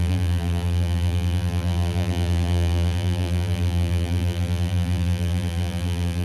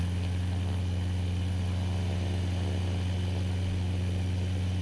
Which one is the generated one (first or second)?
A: first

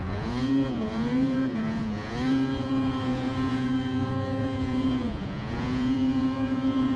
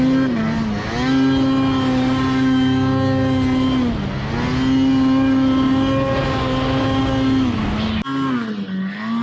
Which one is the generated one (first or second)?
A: first